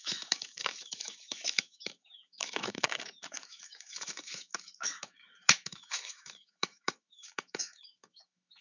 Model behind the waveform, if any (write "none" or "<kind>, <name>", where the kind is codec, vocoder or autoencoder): autoencoder, DAC-VAE